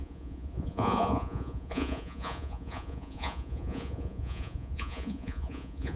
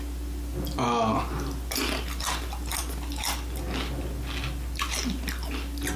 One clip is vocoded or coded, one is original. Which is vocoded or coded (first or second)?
first